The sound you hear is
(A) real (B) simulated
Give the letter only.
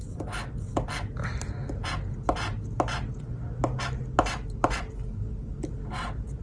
A